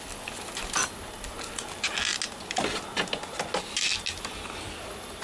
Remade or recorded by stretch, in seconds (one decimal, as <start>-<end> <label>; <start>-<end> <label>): 0.0-5.2 recorded